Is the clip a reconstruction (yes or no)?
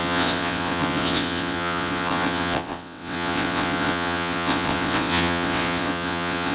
yes